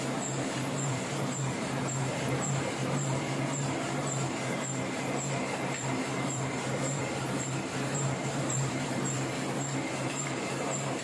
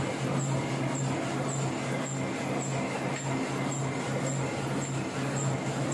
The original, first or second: second